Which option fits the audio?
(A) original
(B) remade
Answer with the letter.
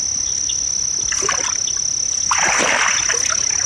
A